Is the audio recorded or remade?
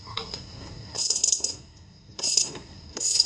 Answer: remade